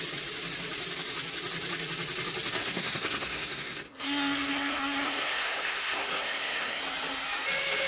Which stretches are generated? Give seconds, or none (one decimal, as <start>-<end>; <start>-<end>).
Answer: 2.6-6.8